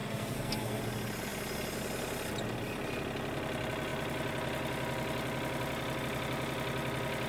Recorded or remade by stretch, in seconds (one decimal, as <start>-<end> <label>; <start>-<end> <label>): 0.0-0.8 remade; 0.8-7.3 recorded